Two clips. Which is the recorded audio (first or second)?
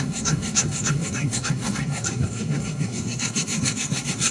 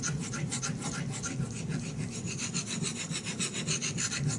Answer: second